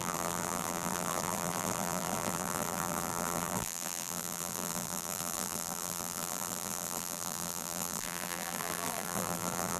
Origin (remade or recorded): remade